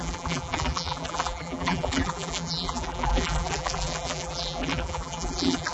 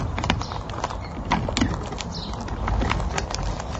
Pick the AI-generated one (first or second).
first